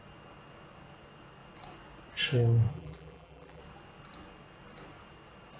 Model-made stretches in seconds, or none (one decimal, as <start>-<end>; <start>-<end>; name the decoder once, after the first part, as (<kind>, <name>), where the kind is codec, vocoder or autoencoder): 2.7-3.6 (vocoder, BigVGAN v2)